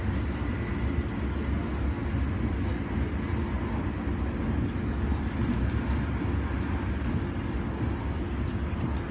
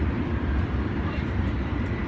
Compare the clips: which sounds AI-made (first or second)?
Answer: second